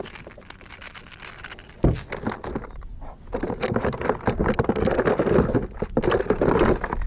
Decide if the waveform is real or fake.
real